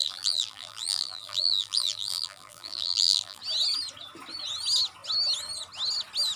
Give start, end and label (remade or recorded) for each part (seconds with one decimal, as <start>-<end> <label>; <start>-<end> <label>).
0.0-3.4 remade; 3.4-6.4 recorded